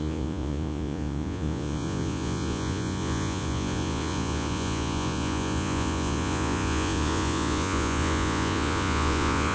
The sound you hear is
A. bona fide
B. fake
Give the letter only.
B